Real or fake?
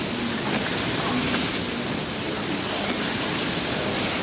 real